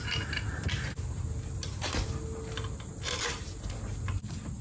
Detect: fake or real real